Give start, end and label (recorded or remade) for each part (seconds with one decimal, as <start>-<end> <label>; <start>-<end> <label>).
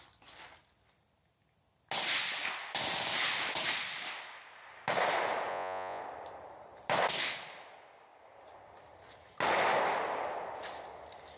0.0-5.5 recorded; 5.5-6.0 remade; 6.0-11.4 recorded